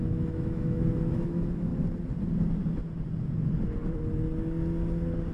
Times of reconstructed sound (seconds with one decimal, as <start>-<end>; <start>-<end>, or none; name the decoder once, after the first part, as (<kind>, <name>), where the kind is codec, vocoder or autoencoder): 0.0-1.7 (autoencoder, DAC-VAE)